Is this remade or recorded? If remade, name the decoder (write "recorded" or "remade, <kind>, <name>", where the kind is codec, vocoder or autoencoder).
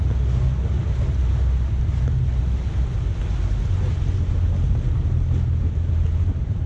recorded